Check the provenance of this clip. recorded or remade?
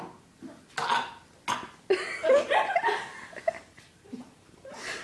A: recorded